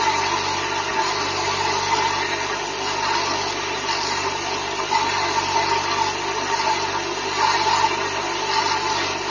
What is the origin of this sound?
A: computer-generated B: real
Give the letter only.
B